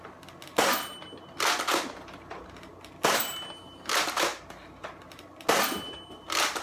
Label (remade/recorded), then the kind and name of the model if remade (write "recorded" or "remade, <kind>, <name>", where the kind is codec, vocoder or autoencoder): recorded